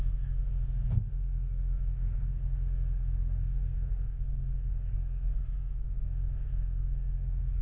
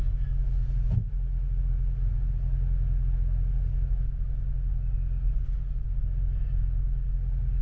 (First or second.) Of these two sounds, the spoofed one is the first